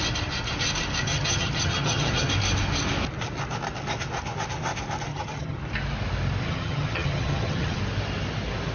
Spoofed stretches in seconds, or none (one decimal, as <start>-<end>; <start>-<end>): 1.1-2.3; 5.1-5.6; 6.4-7.8

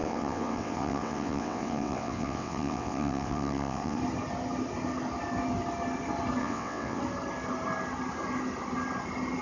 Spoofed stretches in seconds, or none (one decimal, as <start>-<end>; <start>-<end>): 0.0-4.0; 6.4-7.0

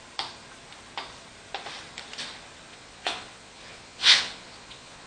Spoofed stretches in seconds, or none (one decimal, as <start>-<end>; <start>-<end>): 2.7-5.1

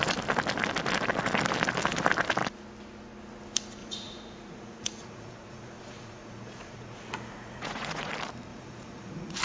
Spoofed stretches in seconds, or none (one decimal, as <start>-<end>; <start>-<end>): 3.8-8.1; 8.5-9.4

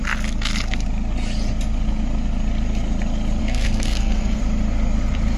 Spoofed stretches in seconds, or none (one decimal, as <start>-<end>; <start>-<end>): 3.4-4.4